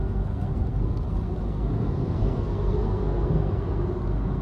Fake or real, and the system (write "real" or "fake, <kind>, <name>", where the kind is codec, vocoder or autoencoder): fake, codec, SNAC